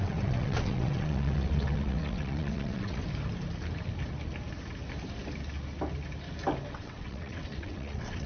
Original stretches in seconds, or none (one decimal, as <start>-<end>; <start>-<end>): 3.0-6.7